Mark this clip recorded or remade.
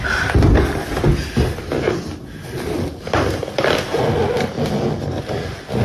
recorded